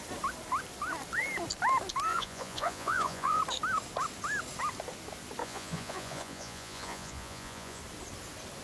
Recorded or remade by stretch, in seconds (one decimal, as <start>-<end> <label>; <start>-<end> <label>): 0.0-2.1 recorded; 2.1-3.4 remade; 3.4-5.4 recorded; 5.4-7.8 remade; 7.8-8.6 recorded